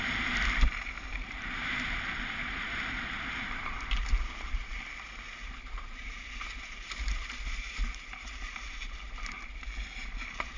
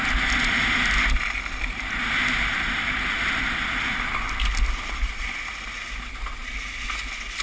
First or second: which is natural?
second